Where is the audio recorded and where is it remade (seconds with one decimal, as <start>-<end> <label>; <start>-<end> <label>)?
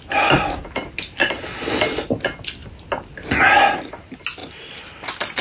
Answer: 0.0-5.4 recorded